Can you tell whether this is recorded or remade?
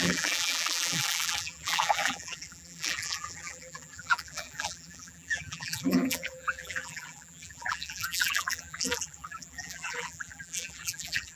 remade